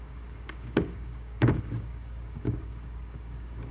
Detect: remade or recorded remade